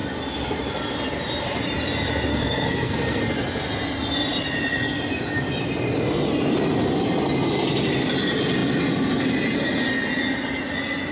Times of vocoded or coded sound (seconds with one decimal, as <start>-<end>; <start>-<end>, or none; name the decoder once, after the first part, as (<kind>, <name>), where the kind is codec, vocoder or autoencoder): 2.3-3.2 (codec, SNAC)